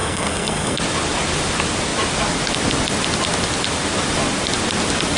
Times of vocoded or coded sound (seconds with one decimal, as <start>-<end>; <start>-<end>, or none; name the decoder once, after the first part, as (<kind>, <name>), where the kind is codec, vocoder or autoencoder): 0.0-0.8 (codec, SNAC)